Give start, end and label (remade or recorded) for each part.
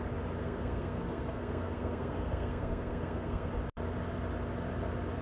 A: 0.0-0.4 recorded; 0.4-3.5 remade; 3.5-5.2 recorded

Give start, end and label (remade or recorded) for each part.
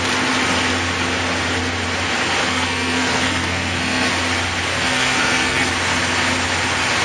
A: 0.0-2.4 recorded; 2.4-4.1 remade; 4.1-4.7 recorded; 4.7-5.7 remade; 5.7-7.0 recorded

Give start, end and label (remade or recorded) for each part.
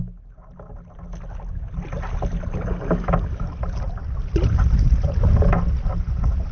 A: 0.0-6.5 recorded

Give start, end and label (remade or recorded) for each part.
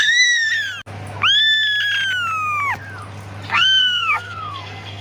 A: 0.0-0.5 remade; 0.5-3.5 recorded; 3.5-5.0 remade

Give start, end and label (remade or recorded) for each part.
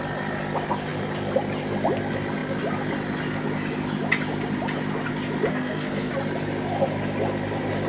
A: 0.0-5.5 recorded; 5.5-6.1 remade; 6.1-7.9 recorded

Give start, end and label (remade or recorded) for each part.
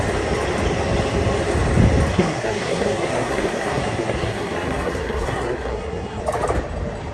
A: 0.0-2.1 recorded; 2.1-6.2 remade; 6.2-7.1 recorded